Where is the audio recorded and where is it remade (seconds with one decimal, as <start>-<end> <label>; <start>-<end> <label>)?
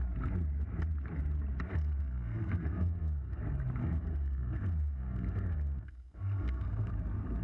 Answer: 0.0-1.7 recorded; 1.7-3.4 remade; 3.4-3.8 recorded; 3.8-6.9 remade; 6.9-7.4 recorded